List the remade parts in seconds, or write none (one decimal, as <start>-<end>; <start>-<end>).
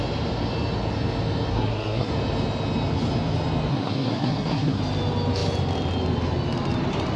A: 1.5-2.1; 3.7-4.8